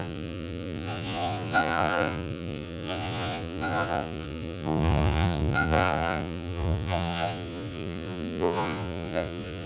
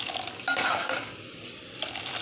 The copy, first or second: first